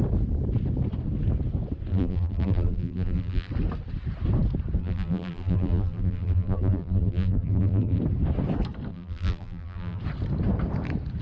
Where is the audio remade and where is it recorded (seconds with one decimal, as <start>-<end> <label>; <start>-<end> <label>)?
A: 0.0-1.9 recorded; 1.9-3.5 remade; 3.5-4.8 recorded; 4.8-8.0 remade; 8.0-8.9 recorded; 8.9-10.0 remade; 10.0-11.2 recorded